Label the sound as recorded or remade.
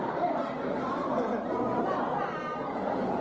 remade